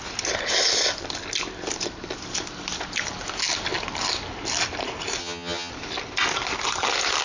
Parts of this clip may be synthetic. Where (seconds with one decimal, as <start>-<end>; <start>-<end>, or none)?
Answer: 5.2-5.7